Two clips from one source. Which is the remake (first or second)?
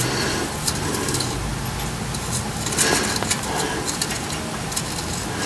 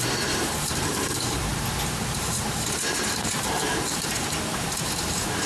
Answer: second